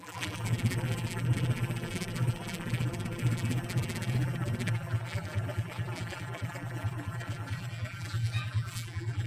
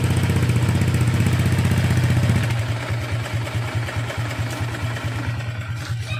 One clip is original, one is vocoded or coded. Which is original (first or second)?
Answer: second